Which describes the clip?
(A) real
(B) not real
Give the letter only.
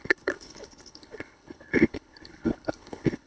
B